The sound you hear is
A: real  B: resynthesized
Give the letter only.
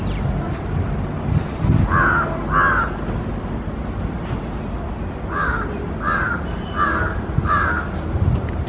A